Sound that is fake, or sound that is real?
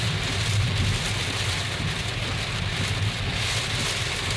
real